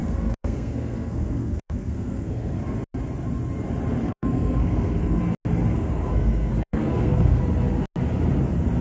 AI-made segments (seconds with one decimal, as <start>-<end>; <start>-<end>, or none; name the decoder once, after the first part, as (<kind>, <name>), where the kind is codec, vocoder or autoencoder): 0.0-2.6 (codec, SNAC); 4.0-5.2; 5.7-7.4